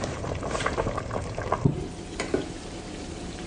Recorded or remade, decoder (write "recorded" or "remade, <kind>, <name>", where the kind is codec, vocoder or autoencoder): remade, vocoder, BigVGAN v2